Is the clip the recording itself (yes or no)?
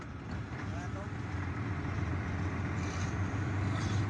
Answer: no